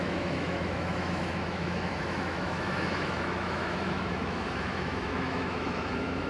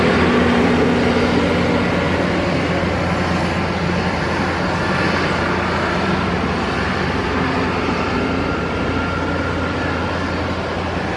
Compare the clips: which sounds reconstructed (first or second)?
first